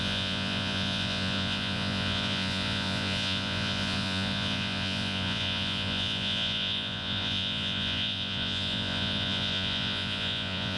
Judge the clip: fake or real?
fake